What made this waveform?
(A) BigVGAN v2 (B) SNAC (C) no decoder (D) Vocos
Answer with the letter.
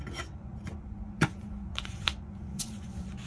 D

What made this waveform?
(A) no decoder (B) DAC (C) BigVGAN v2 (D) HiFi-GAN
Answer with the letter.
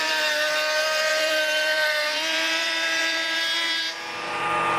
C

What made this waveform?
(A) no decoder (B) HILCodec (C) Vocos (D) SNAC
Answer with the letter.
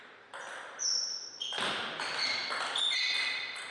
A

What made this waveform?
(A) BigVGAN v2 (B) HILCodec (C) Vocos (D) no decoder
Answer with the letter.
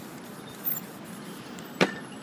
D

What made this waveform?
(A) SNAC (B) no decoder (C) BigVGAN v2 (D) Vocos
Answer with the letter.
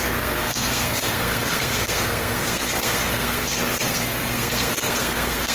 A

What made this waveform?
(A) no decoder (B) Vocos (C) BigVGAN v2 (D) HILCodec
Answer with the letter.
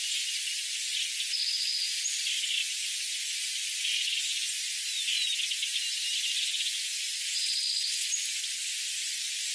A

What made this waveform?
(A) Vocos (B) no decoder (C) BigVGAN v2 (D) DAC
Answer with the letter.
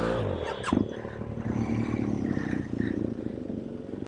B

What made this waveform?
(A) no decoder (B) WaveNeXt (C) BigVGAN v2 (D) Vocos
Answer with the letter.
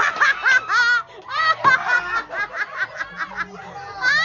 A